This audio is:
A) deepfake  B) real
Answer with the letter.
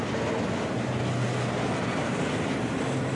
B